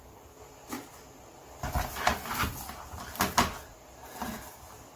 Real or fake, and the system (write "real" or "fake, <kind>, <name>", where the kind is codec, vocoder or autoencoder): real